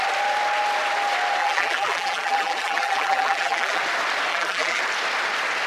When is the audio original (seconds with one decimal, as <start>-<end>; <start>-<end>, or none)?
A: 0.0-1.4; 3.8-4.3; 4.8-5.7